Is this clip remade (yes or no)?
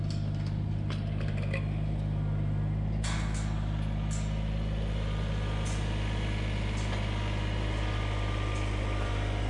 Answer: no